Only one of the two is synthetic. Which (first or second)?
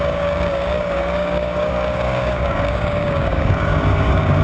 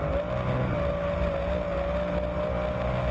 first